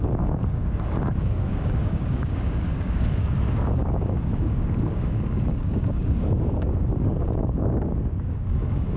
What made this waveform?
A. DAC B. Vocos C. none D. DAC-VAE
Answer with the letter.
A